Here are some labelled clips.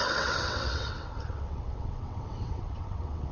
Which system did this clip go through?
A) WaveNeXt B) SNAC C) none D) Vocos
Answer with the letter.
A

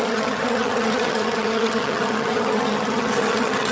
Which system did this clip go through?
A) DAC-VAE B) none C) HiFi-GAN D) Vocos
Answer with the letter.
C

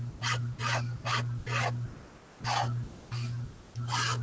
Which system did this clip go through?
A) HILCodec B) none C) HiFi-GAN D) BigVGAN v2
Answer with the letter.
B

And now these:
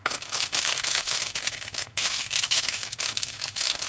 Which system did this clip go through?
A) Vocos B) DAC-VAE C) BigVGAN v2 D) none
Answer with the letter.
B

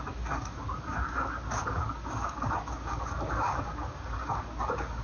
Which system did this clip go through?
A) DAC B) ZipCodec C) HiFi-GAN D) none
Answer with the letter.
A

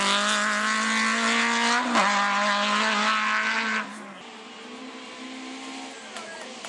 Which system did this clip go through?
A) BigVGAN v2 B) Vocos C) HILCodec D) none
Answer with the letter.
D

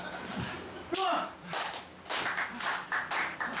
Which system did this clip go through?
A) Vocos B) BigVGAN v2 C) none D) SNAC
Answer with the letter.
C